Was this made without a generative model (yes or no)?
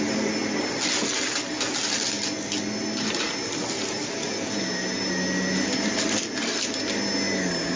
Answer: yes